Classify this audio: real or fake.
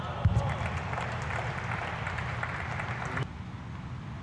real